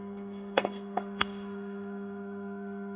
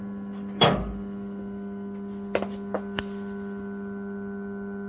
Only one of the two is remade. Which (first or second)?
first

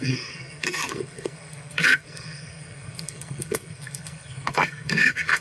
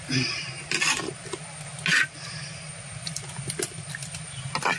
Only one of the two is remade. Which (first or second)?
first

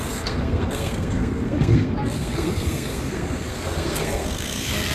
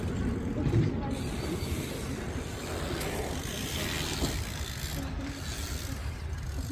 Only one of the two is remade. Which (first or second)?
first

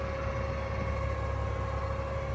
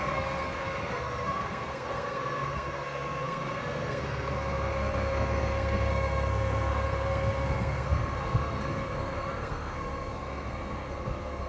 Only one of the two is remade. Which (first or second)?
second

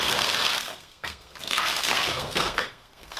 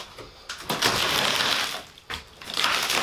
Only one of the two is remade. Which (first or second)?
first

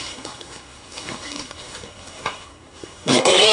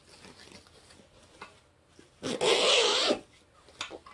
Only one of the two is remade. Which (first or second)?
first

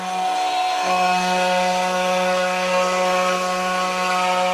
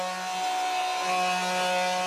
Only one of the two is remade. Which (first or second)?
first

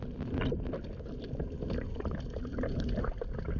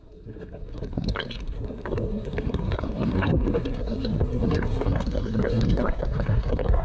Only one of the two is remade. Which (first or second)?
second